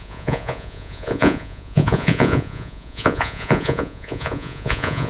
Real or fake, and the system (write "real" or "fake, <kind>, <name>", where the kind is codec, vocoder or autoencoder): fake, vocoder, Vocos